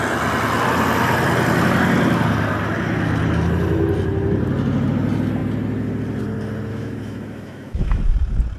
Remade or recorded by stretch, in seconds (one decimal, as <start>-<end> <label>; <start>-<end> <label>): 0.0-6.7 recorded; 6.7-8.0 remade; 8.0-8.6 recorded